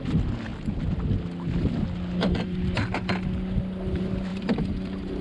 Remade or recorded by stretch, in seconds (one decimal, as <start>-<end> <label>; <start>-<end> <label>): 0.0-4.3 recorded; 4.3-5.2 remade